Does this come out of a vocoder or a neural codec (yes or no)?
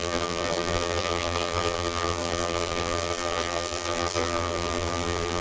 yes